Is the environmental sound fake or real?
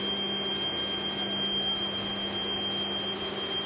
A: real